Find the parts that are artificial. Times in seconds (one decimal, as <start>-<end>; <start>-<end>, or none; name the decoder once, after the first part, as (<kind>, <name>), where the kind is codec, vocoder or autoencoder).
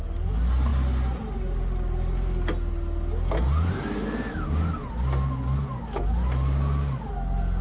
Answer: none